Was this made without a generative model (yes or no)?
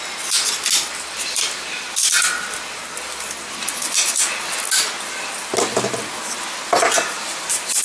yes